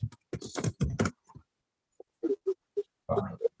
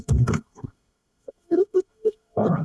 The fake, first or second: second